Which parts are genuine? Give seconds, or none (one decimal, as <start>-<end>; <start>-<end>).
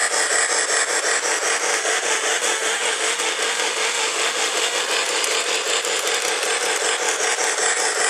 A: 0.0-1.7; 4.8-8.1